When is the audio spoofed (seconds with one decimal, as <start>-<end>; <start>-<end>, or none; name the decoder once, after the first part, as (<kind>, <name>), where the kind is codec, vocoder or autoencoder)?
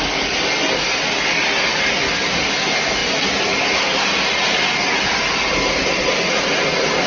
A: none